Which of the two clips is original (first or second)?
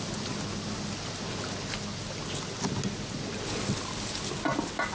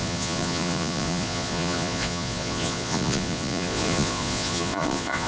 first